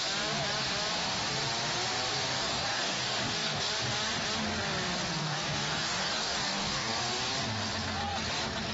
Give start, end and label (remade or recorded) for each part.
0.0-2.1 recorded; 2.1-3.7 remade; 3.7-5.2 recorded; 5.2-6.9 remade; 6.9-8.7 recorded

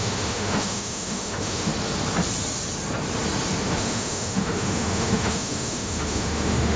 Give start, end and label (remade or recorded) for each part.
0.0-1.7 remade; 1.7-3.6 recorded; 3.6-6.8 remade

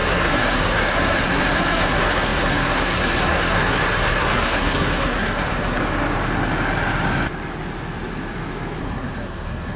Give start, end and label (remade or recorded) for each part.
0.0-5.8 remade; 5.8-8.8 recorded; 8.8-9.8 remade

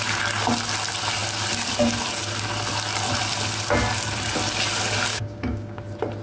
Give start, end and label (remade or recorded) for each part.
0.0-5.1 recorded; 5.1-5.8 remade; 5.8-6.2 recorded